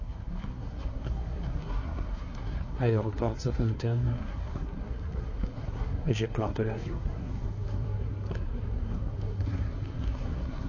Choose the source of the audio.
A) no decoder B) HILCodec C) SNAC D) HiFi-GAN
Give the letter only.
C